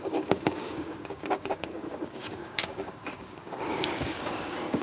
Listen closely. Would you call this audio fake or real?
fake